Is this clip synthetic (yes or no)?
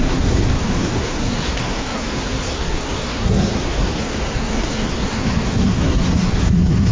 yes